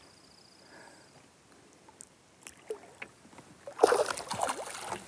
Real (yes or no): yes